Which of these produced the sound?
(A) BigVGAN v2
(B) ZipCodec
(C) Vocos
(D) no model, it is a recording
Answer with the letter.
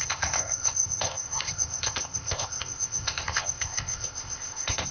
B